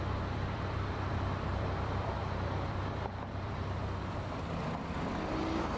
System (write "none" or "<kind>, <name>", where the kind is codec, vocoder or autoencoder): vocoder, BigVGAN v2